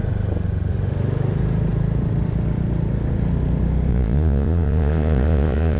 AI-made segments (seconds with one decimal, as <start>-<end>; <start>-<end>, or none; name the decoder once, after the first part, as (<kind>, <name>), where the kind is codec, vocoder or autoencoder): 3.9-5.8 (vocoder, Vocos)